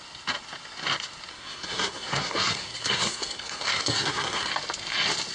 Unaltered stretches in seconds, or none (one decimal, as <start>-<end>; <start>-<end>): 0.0-1.3; 4.5-5.3